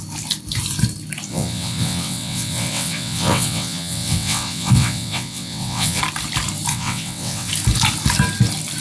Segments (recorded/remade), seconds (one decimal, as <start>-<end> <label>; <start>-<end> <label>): 0.0-1.3 recorded; 1.3-6.0 remade; 6.0-6.7 recorded; 6.7-7.5 remade; 7.5-8.8 recorded